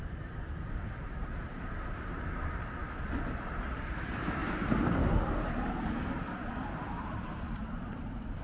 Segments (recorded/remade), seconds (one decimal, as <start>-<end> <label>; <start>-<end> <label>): 0.0-2.8 remade; 2.8-3.4 recorded; 3.4-4.4 remade; 4.4-6.5 recorded; 6.5-8.4 remade